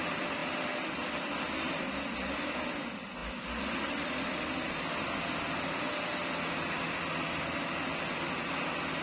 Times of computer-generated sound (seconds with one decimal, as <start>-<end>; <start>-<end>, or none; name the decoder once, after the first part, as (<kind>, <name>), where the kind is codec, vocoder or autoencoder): none